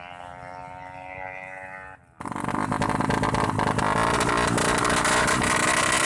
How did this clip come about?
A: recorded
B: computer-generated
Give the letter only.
A